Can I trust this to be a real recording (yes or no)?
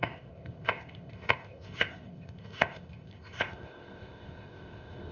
no